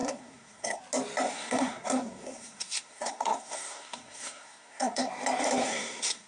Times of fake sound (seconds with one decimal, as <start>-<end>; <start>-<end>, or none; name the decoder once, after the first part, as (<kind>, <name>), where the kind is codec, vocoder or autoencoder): 0.0-0.8 (codec, SNAC); 1.3-5.1; 5.6-6.3